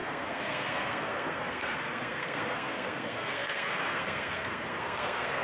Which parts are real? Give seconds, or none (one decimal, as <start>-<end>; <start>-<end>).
none